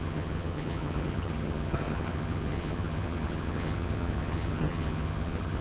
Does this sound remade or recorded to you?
remade